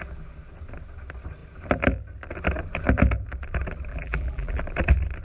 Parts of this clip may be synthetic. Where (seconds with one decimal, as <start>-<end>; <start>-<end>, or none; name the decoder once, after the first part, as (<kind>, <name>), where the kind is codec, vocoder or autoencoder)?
3.9-4.6 (vocoder, BigVGAN v2)